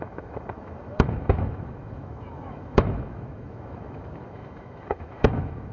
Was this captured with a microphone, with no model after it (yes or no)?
no